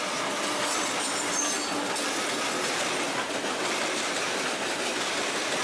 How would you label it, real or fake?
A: real